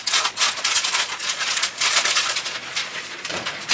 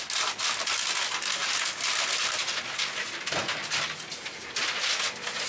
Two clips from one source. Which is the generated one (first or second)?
first